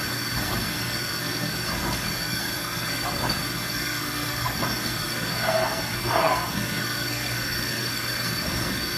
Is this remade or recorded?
remade